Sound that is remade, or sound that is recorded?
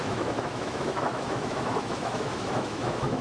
remade